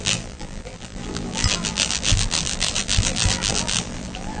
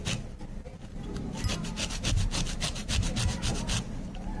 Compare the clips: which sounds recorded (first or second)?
second